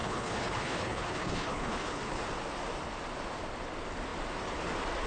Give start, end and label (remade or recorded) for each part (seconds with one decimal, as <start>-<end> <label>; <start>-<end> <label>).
0.0-2.2 remade; 2.2-5.1 recorded